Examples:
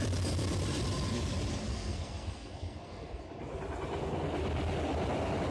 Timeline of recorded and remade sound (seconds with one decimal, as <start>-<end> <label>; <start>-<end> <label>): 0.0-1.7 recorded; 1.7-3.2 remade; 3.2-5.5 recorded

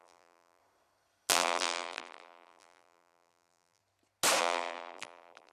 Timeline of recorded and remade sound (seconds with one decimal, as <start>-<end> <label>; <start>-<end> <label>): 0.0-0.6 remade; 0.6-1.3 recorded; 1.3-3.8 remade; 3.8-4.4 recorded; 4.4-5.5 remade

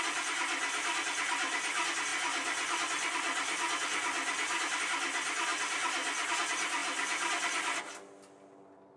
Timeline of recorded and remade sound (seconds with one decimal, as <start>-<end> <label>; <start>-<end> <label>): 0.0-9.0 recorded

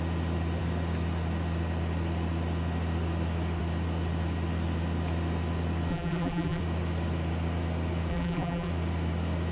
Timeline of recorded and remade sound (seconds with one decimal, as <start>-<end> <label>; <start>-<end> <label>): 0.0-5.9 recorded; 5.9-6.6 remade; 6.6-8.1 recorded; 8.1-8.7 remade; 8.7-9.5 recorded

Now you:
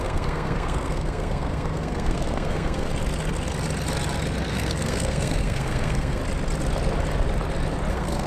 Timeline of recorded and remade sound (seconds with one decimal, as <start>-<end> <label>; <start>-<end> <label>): 0.0-2.9 remade; 2.9-4.5 recorded; 4.5-6.2 remade; 6.2-7.9 recorded; 7.9-8.3 remade